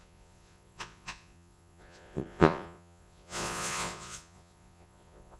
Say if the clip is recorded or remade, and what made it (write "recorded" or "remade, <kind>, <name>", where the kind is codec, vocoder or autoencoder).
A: remade, vocoder, Vocos